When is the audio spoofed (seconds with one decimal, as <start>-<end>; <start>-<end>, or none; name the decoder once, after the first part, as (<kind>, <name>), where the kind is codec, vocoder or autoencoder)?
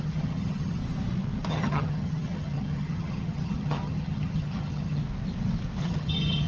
0.0-0.8 (vocoder, HiFi-GAN); 1.5-5.0; 5.8-6.5